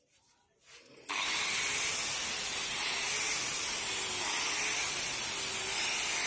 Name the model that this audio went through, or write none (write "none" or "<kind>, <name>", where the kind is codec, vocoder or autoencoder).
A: none